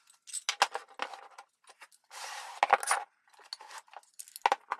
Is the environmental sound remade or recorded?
recorded